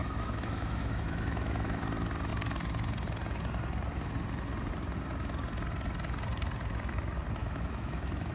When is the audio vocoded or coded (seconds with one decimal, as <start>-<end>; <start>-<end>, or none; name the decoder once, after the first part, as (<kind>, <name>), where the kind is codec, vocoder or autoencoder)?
0.0-1.8 (autoencoder, DAC-VAE); 7.4-8.3